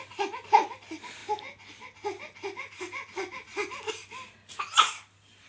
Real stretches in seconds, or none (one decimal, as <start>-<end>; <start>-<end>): 0.0-5.5